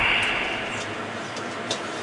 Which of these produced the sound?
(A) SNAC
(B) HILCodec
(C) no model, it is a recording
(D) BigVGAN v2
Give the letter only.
C